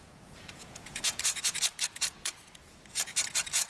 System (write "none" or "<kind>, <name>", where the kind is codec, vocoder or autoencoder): vocoder, Vocos